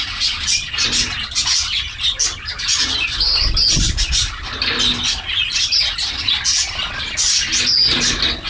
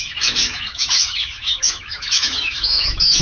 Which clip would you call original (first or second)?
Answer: first